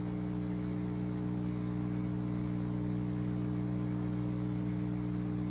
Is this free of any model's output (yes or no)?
yes